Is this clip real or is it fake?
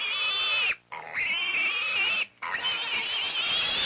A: real